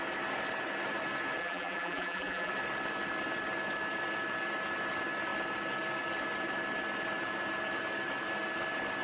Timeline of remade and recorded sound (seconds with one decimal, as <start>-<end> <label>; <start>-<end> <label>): 0.0-1.4 recorded; 1.4-2.5 remade; 2.5-9.0 recorded